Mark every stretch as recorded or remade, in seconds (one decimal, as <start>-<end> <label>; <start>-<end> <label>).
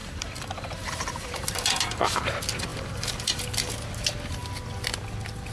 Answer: 0.0-1.5 remade; 1.5-2.7 recorded; 2.7-3.4 remade; 3.4-5.5 recorded